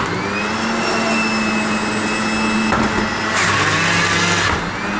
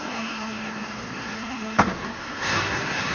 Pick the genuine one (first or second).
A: first